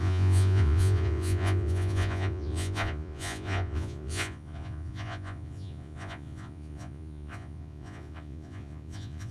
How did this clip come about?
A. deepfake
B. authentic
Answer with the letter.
A